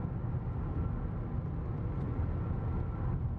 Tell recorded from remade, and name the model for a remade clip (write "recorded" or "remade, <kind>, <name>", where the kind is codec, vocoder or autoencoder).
recorded